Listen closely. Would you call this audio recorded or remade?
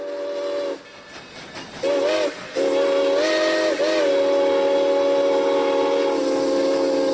recorded